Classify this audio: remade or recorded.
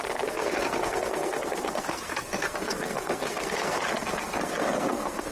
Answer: remade